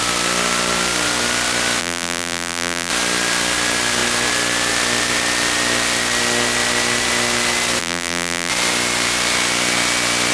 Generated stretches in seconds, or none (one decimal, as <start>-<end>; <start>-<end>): 1.8-2.9; 7.8-8.5